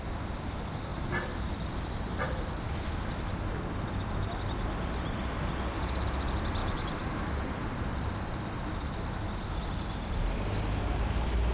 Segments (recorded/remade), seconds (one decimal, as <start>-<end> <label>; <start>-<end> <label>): 0.0-0.9 recorded; 0.9-2.7 remade; 2.7-6.6 recorded; 6.6-7.9 remade; 7.9-11.5 recorded